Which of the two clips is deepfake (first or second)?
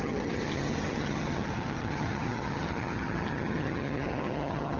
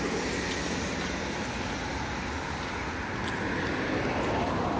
first